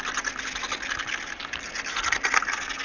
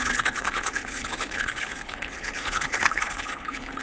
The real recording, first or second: first